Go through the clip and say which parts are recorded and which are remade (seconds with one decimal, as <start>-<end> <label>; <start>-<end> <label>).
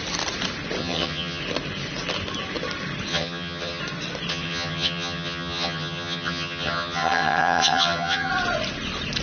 0.0-0.8 recorded; 0.8-1.4 remade; 1.4-3.1 recorded; 3.1-3.8 remade; 3.8-4.3 recorded; 4.3-8.3 remade; 8.3-9.2 recorded